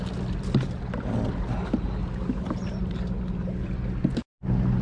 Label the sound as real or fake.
real